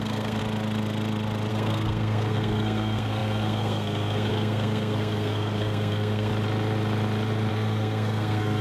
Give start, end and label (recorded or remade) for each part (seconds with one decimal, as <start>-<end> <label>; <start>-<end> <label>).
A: 0.0-0.4 remade; 0.4-1.5 recorded; 1.5-6.3 remade; 6.3-7.5 recorded; 7.5-8.6 remade